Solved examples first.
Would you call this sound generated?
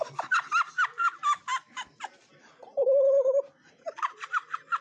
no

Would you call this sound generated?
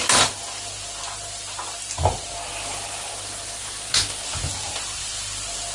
no